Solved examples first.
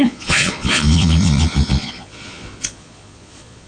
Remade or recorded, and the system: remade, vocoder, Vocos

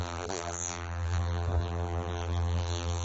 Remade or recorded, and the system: remade, vocoder, BigVGAN v2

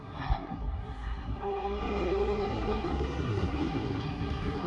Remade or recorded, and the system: remade, codec, SNAC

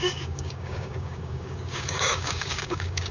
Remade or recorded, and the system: remade, codec, DAC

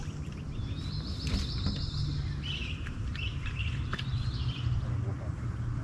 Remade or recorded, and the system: recorded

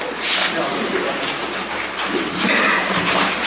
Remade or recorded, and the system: remade, vocoder, BigVGAN v2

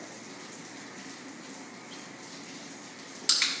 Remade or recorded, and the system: recorded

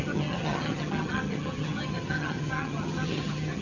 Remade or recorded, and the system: remade, vocoder, HiFi-GAN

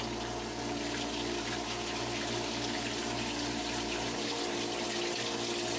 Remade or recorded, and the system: recorded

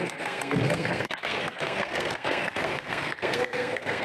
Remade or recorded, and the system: remade, codec, SNAC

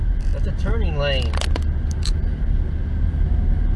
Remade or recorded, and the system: recorded